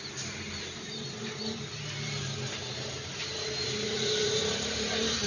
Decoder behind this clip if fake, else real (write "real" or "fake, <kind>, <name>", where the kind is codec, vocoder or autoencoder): fake, vocoder, BigVGAN v2